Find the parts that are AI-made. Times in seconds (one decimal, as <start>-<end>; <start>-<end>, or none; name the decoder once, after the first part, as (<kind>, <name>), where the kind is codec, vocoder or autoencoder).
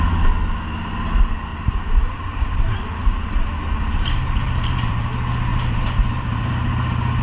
1.5-5.1 (vocoder, BigVGAN v2); 5.5-6.5